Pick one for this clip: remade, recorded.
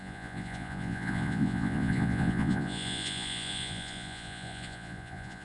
remade